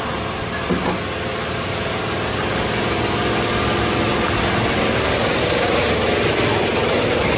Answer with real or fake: real